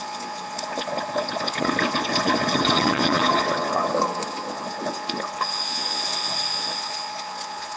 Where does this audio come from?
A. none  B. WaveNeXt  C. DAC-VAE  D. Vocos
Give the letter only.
D